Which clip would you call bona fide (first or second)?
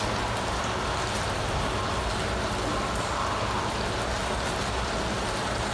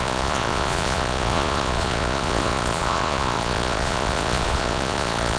first